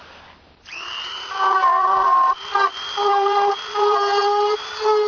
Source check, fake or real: fake